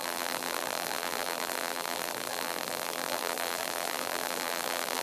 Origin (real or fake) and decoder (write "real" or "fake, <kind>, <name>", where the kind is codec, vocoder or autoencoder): fake, vocoder, BigVGAN v2